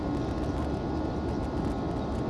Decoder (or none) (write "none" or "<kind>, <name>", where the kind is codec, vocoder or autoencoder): none